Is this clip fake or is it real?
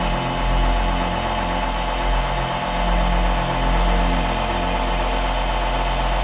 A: real